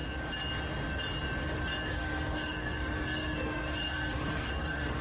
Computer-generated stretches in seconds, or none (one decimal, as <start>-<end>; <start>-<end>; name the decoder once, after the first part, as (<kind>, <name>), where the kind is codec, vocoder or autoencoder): 1.9-5.0 (codec, SNAC)

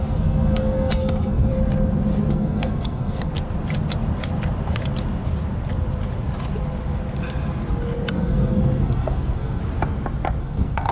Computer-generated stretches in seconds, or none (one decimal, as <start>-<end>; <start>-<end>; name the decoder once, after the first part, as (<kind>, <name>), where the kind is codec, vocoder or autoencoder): 0.0-1.5 (codec, SNAC); 2.3-3.3; 8.1-9.6; 10.4-10.9

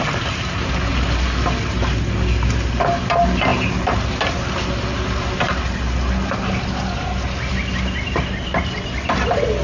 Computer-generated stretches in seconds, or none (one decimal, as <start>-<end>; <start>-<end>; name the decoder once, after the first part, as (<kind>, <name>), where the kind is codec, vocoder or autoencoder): none

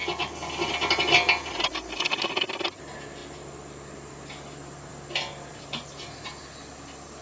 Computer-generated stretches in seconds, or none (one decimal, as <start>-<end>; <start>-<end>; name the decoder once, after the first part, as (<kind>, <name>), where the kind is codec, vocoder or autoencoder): none

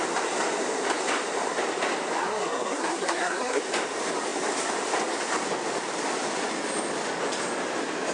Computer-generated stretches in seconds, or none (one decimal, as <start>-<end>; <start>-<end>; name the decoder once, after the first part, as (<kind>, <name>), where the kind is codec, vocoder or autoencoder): 2.2-3.6 (codec, SNAC)

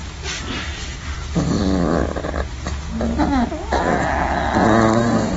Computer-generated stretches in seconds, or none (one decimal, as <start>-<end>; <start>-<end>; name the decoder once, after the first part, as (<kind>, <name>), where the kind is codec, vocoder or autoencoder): 0.0-1.6 (vocoder, BigVGAN v2)